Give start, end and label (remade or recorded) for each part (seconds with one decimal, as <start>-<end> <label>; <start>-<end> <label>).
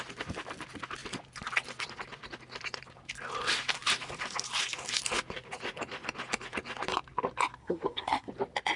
0.0-7.6 recorded; 7.6-8.3 remade; 8.3-8.8 recorded